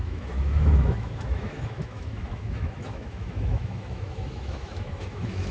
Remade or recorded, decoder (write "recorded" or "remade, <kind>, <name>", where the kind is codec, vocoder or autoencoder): remade, autoencoder, DAC-VAE